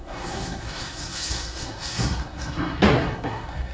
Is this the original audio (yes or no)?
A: no